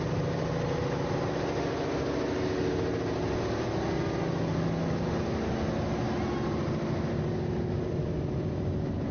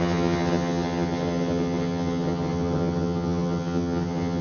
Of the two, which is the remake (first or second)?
second